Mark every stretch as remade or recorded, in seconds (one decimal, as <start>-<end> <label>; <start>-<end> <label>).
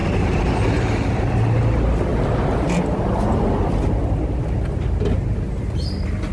0.0-1.3 remade; 1.3-6.3 recorded